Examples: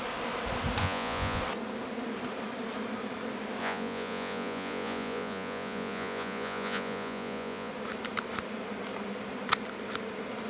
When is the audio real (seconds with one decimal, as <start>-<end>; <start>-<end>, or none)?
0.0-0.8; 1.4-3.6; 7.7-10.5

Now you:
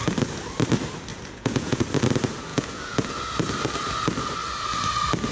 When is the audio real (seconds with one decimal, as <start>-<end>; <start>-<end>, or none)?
0.0-1.1; 1.8-2.5; 3.1-5.3

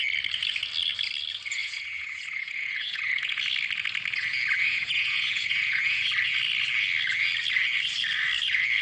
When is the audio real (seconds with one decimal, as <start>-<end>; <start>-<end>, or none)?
0.0-1.6; 3.4-4.7; 6.1-8.8

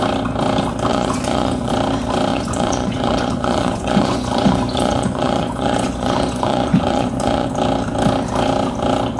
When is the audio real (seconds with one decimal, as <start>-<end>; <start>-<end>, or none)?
0.0-0.9; 1.7-2.3; 7.5-9.2

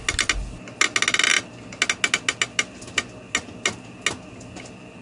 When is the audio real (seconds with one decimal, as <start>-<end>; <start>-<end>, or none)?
0.0-5.0

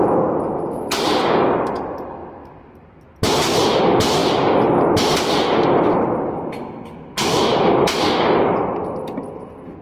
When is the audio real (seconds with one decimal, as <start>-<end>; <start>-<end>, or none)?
0.0-9.8